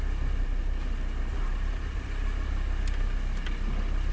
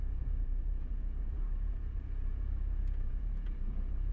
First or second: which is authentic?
first